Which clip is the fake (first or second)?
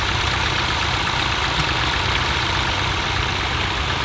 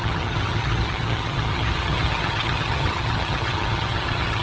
second